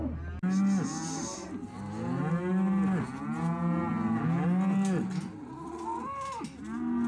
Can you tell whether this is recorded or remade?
recorded